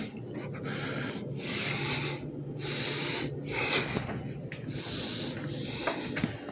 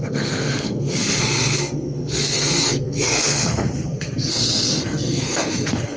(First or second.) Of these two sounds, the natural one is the first